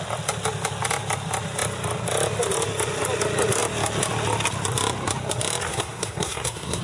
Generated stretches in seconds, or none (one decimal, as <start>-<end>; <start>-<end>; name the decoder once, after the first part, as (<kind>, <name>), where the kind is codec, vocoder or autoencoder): 5.7-6.8 (codec, SNAC)